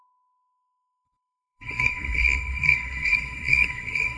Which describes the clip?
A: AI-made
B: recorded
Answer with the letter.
A